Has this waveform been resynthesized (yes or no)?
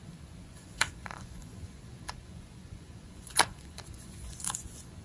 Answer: yes